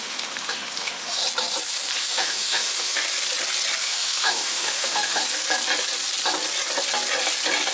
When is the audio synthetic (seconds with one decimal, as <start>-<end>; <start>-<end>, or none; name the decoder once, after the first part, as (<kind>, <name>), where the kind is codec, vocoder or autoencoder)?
0.0-1.2 (autoencoder, DAC-VAE); 2.0-3.0; 3.8-5.2